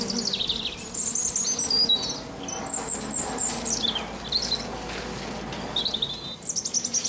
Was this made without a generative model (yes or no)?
yes